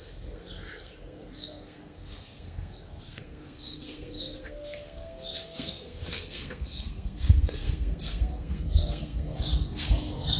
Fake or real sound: fake